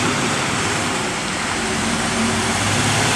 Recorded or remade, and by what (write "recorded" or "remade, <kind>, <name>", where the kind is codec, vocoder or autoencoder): remade, vocoder, BigVGAN v2